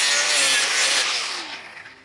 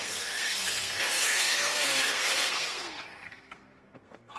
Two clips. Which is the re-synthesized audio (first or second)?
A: second